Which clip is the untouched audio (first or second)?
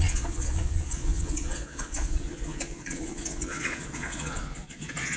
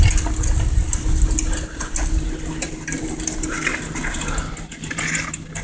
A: second